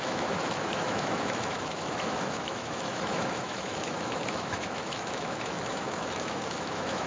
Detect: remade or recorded remade